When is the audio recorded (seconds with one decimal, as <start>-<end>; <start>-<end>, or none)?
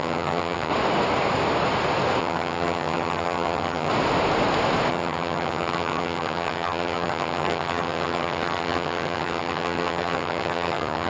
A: 0.7-2.2; 3.9-4.9